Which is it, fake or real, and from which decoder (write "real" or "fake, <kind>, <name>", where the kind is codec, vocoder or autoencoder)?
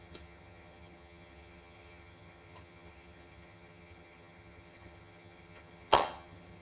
fake, vocoder, HiFi-GAN